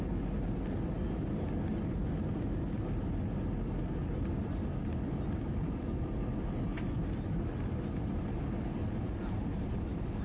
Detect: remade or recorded recorded